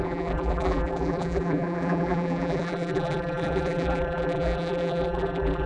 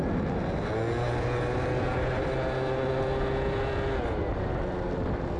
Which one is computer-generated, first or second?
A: first